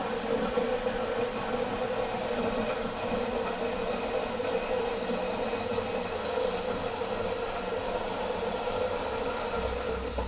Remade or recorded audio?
recorded